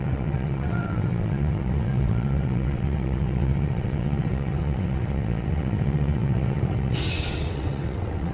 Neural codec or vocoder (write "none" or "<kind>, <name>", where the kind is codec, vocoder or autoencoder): vocoder, WaveNeXt